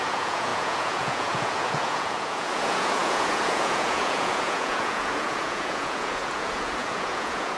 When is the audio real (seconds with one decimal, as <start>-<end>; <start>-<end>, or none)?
none